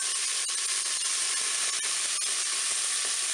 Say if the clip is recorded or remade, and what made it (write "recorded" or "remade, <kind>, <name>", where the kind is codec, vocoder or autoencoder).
recorded